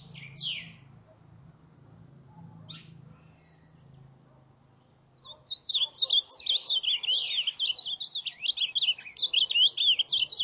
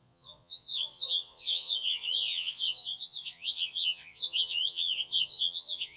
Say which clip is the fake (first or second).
second